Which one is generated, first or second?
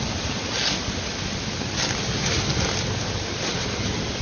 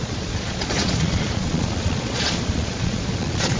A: second